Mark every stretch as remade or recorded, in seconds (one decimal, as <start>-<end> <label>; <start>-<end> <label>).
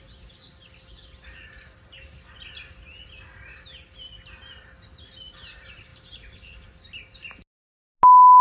0.0-8.4 recorded